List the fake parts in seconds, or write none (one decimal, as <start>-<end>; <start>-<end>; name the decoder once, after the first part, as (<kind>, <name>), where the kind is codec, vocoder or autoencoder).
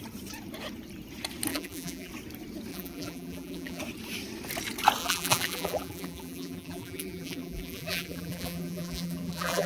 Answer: 1.5-2.1 (vocoder, BigVGAN v2); 2.7-3.8; 5.0-9.7